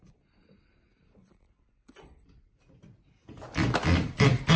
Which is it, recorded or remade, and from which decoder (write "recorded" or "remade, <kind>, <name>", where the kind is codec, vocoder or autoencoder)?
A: recorded